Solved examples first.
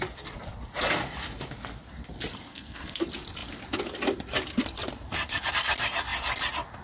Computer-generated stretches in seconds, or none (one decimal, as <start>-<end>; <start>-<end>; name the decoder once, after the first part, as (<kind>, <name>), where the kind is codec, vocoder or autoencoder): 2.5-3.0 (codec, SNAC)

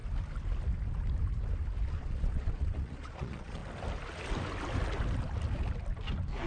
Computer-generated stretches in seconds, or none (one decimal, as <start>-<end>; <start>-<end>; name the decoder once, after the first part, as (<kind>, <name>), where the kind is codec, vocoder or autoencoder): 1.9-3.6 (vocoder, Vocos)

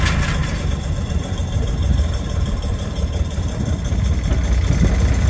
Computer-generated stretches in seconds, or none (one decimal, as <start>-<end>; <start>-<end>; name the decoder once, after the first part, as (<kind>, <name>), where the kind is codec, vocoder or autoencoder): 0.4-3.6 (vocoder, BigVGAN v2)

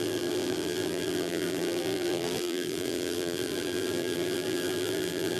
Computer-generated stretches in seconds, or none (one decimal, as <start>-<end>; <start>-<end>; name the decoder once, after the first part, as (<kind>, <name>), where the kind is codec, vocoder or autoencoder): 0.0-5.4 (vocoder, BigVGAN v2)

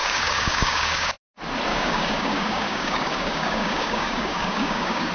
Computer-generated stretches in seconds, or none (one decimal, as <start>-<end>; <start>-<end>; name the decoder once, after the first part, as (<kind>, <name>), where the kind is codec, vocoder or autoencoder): 0.0-1.2 (codec, DAC); 1.7-5.1